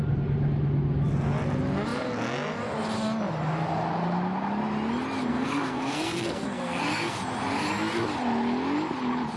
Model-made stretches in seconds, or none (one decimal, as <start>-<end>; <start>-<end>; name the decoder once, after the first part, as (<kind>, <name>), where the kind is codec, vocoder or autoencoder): 5.3-7.2 (codec, SNAC)